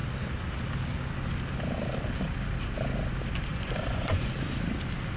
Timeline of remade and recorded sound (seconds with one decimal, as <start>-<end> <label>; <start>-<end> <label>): 0.0-3.5 recorded; 3.5-4.3 remade; 4.3-5.2 recorded